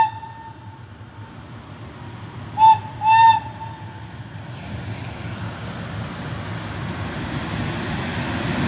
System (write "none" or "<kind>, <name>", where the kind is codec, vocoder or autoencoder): none